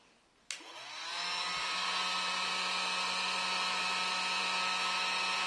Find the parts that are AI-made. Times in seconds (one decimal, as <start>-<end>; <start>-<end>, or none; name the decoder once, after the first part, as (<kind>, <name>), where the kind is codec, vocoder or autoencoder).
none